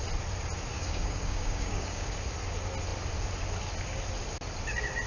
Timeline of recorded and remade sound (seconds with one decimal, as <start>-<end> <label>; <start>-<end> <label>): 0.0-0.7 recorded; 0.7-2.1 remade; 2.1-5.1 recorded

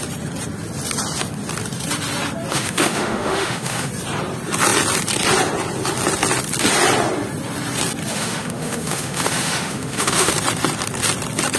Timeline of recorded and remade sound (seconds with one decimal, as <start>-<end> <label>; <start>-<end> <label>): 0.0-2.5 recorded; 2.5-3.9 remade; 3.9-8.1 recorded; 8.1-10.3 remade; 10.3-11.6 recorded